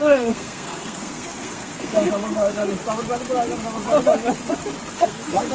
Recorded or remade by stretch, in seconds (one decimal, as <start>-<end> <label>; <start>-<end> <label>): 0.0-2.6 remade; 2.6-4.9 recorded; 4.9-5.5 remade